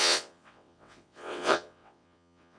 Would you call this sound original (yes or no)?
no